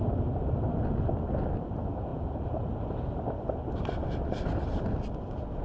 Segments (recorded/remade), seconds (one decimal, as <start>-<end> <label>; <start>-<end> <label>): 0.0-5.6 recorded